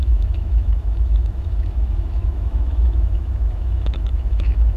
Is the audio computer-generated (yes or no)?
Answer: yes